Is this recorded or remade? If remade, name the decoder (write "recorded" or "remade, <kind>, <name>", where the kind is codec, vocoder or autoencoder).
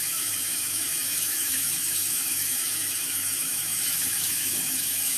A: remade, autoencoder, DAC-VAE